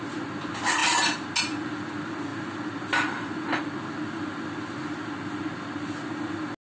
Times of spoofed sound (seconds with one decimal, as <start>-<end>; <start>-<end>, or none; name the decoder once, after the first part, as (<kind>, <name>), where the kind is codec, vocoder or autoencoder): none